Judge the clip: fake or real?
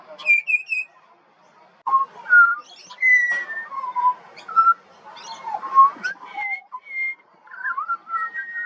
real